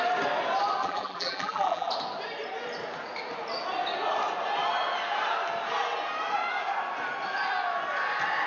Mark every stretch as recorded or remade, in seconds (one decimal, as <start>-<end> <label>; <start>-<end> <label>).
0.0-0.8 recorded; 0.8-1.9 remade; 1.9-8.5 recorded